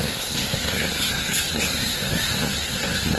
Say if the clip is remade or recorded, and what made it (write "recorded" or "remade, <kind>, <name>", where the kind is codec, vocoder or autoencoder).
remade, codec, SNAC